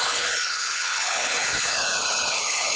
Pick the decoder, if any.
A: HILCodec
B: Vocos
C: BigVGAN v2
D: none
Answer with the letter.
A